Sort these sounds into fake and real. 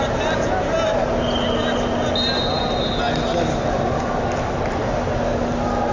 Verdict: real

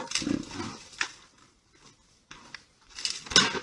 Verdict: real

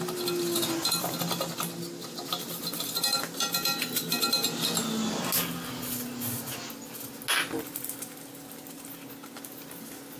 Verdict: real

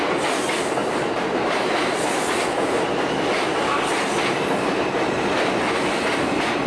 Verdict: real